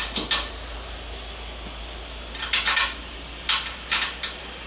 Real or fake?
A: real